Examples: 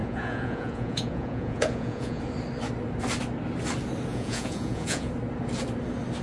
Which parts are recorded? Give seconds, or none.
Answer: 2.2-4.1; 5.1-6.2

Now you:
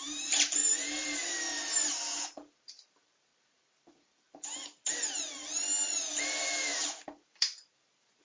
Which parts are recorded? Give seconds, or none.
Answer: 0.6-1.9; 3.3-6.2

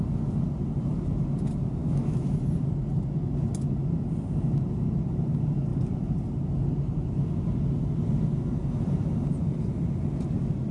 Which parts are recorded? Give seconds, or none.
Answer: 0.0-1.8; 2.4-10.7

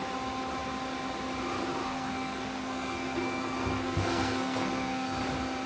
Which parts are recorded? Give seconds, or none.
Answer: 0.0-1.8; 5.2-5.7

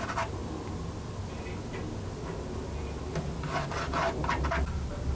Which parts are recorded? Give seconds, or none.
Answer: 0.0-5.2

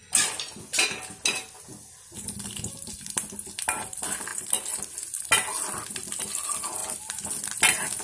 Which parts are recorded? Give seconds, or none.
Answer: 0.0-8.0